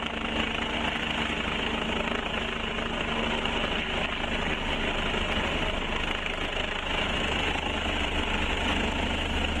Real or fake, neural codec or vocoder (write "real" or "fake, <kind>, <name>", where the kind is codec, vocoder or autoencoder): real